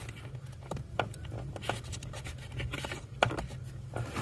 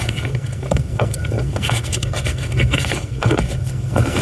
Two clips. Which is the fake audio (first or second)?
second